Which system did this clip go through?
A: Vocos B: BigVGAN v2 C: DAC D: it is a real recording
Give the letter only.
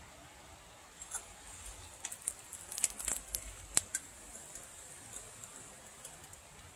D